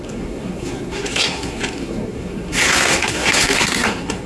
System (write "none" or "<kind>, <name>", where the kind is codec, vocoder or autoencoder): codec, SNAC